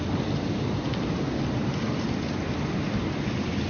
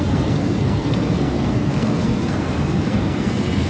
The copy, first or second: second